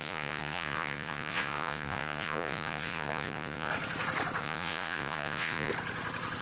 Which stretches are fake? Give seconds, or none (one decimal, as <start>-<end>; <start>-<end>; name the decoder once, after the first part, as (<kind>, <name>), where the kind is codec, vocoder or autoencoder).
0.0-3.7 (vocoder, Vocos); 4.4-5.7